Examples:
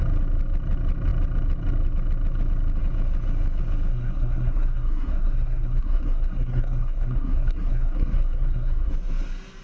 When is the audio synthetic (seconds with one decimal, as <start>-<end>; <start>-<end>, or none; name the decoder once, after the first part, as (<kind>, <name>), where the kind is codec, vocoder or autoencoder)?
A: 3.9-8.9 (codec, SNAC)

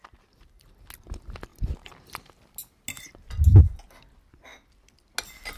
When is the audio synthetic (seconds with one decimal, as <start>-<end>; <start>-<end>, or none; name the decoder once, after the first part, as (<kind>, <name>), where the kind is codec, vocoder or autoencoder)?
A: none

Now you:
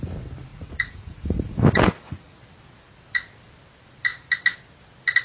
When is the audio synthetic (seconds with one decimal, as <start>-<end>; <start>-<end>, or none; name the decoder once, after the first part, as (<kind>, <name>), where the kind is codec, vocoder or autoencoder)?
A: 0.5-2.4 (vocoder, Vocos)